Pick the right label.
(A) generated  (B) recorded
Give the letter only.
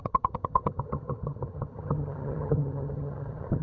A